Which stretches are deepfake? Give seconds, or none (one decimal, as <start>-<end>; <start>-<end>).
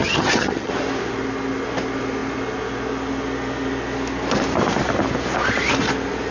0.0-0.7